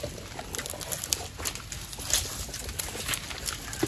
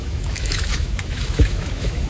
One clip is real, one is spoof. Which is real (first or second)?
first